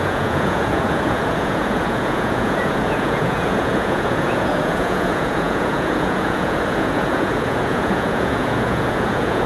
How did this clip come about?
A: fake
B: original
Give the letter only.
A